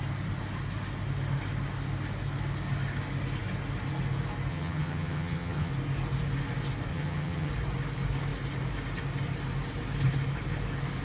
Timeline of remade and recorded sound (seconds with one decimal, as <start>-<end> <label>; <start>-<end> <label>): 0.0-4.5 recorded; 4.5-5.7 remade; 5.7-6.9 recorded; 6.9-7.5 remade; 7.5-11.0 recorded